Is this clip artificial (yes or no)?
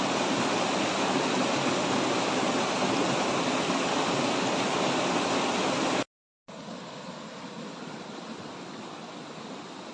no